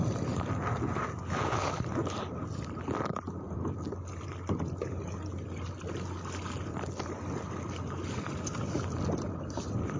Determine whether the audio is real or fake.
real